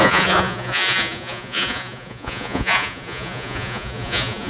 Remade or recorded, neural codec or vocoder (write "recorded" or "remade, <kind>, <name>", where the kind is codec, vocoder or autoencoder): remade, vocoder, Vocos